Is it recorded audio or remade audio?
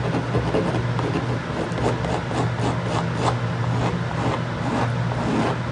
recorded